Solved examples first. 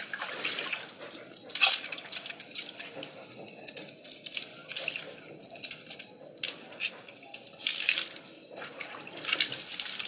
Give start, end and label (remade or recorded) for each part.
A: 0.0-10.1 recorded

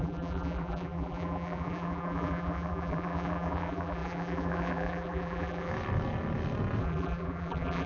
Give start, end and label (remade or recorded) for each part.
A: 0.0-5.7 remade; 5.7-6.8 recorded; 6.8-7.9 remade

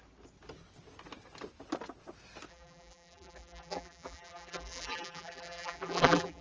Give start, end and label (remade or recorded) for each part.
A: 0.0-2.5 recorded; 2.5-6.4 remade

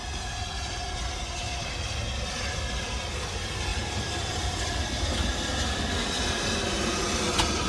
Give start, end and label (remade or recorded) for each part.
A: 0.0-7.7 recorded

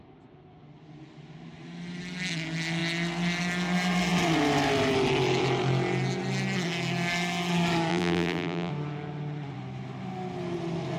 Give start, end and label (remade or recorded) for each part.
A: 0.0-7.9 recorded; 7.9-8.7 remade; 8.7-11.0 recorded

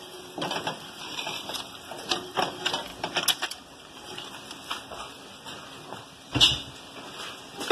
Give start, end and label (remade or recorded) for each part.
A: 0.0-2.9 remade; 2.9-7.7 recorded

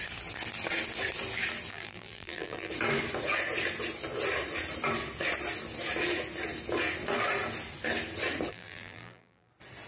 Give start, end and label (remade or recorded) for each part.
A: 0.0-1.7 recorded; 1.7-2.7 remade; 2.7-8.5 recorded; 8.5-9.5 remade; 9.5-9.9 recorded